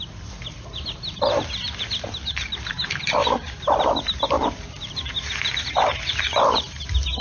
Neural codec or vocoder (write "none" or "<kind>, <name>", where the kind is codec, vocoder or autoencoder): none